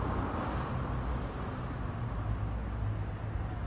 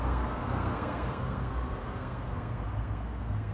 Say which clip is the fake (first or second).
second